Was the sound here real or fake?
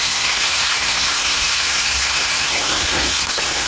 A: fake